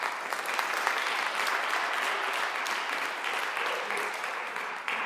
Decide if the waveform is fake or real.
real